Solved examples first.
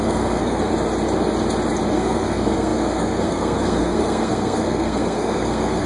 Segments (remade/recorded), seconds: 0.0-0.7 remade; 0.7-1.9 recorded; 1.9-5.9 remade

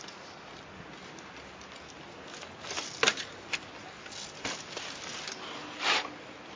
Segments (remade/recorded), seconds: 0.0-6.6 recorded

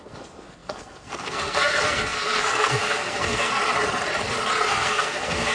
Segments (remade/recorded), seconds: 0.0-3.6 remade; 3.6-4.7 recorded; 4.7-5.5 remade